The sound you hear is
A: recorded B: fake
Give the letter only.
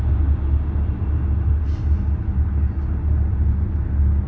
A